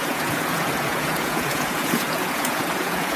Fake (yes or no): yes